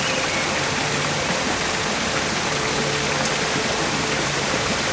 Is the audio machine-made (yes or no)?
no